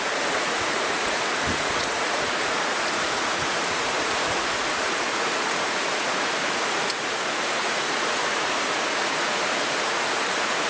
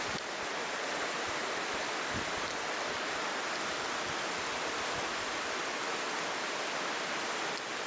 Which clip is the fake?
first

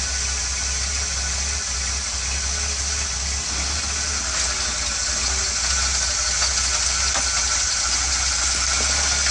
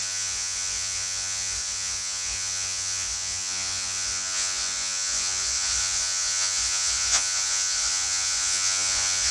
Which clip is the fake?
second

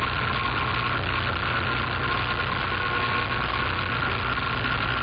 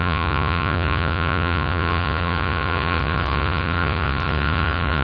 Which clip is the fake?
second